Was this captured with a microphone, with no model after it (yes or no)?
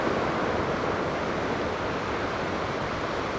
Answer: no